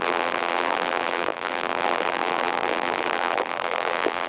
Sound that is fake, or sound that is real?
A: fake